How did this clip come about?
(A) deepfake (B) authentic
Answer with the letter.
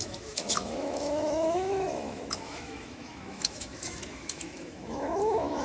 A